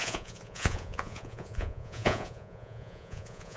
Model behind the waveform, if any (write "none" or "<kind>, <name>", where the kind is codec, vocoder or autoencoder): vocoder, Vocos